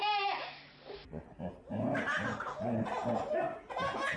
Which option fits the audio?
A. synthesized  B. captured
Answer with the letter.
B